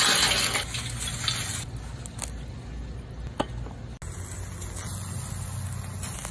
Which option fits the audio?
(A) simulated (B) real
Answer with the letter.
B